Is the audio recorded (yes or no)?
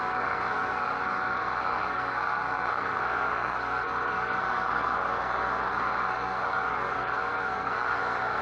no